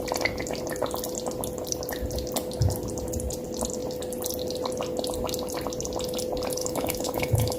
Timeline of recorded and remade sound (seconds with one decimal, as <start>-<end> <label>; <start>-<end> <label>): 0.0-6.6 recorded; 6.6-7.6 remade